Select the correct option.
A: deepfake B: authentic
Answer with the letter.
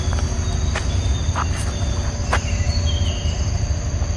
B